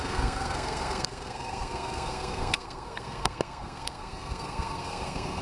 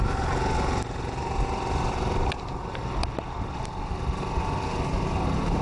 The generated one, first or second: first